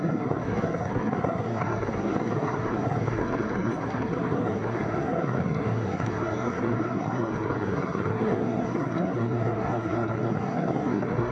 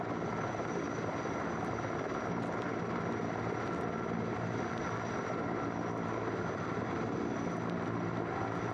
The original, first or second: second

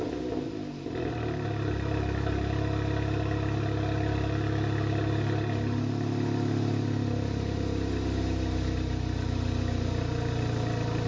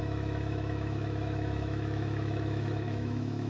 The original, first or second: first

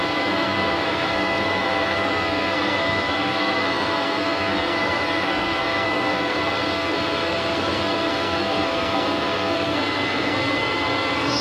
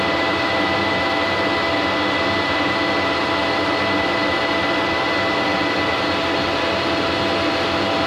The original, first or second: second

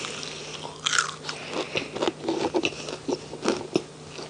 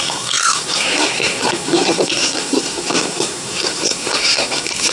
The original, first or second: first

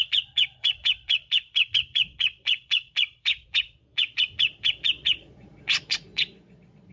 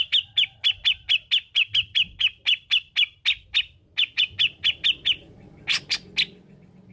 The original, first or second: second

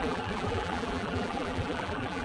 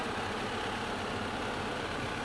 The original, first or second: second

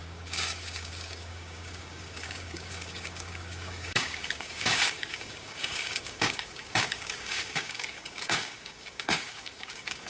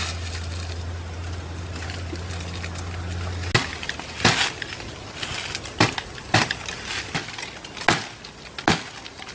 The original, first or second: second